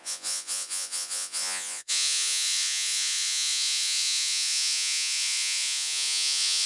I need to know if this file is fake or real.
fake